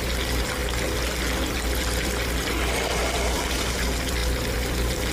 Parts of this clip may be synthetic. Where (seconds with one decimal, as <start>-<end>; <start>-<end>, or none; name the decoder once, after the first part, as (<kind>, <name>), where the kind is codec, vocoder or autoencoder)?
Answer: 4.2-5.1 (vocoder, BigVGAN v2)

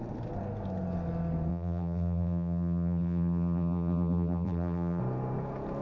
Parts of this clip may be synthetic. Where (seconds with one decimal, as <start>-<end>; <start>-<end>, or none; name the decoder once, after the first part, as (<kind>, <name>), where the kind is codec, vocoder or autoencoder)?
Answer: 1.5-5.0 (vocoder, BigVGAN v2)